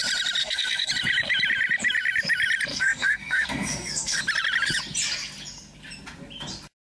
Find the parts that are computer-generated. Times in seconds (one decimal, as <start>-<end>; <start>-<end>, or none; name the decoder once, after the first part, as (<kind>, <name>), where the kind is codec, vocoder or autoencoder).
0.4-0.9 (codec, SNAC); 2.7-4.2